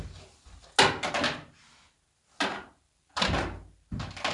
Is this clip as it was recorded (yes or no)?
yes